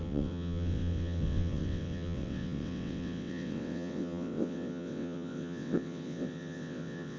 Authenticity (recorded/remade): remade